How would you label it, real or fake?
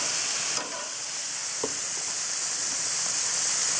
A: real